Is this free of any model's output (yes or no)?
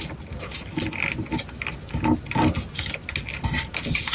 yes